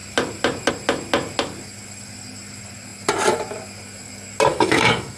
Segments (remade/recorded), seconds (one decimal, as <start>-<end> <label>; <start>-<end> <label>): 0.0-4.5 recorded; 4.5-5.2 remade